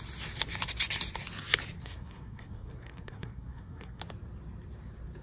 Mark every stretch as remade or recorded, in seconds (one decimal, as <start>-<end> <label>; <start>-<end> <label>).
0.0-1.8 recorded; 1.8-4.0 remade; 4.0-5.2 recorded

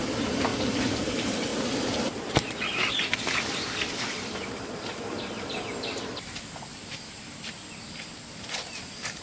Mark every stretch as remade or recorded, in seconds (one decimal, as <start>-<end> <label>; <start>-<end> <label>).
0.0-1.5 recorded; 1.5-2.9 remade; 2.9-6.7 recorded; 6.7-7.5 remade; 7.5-9.2 recorded

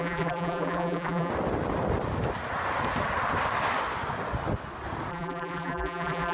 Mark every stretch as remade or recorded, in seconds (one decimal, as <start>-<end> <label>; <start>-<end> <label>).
0.0-1.3 remade; 1.3-5.1 recorded; 5.1-6.3 remade

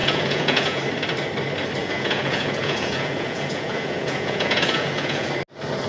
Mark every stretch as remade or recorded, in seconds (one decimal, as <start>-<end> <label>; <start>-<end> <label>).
0.0-0.8 remade; 0.8-1.8 recorded; 1.8-5.3 remade; 5.3-5.9 recorded

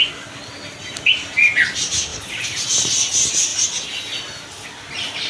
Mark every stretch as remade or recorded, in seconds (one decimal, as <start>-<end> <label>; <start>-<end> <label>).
0.0-5.3 recorded

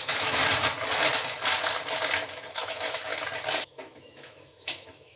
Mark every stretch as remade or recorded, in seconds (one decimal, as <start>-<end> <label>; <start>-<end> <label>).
0.0-0.4 remade; 0.4-2.5 recorded; 2.5-3.1 remade; 3.1-3.6 recorded; 3.6-5.2 remade

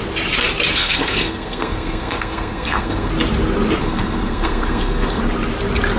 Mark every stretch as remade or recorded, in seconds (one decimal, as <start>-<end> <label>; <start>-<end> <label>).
0.0-0.7 recorded; 0.7-3.1 remade; 3.1-3.8 recorded; 3.8-5.2 remade; 5.2-6.0 recorded